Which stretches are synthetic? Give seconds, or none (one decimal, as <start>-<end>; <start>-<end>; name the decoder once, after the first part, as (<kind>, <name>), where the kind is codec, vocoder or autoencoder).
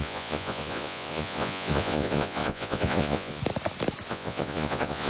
0.0-3.4 (vocoder, Vocos); 4.1-5.1